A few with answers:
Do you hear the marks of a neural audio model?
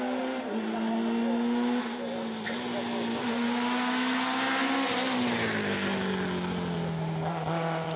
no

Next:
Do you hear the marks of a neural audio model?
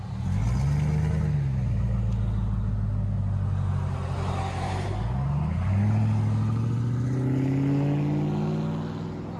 no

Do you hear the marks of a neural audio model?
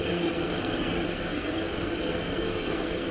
yes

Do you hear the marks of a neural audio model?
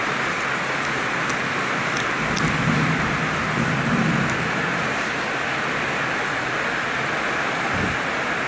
no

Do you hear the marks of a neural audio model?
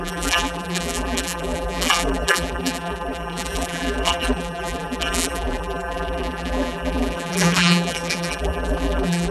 yes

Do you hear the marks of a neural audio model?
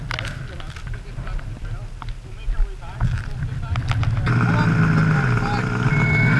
no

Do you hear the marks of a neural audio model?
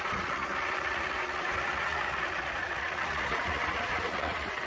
yes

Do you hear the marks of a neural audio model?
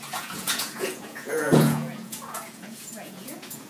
yes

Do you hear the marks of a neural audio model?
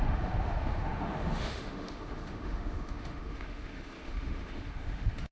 yes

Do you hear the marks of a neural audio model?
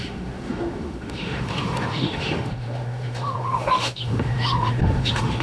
yes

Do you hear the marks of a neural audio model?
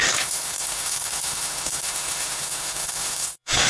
yes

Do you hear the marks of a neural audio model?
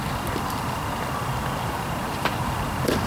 no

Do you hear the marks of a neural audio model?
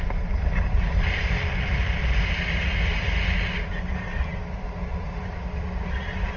no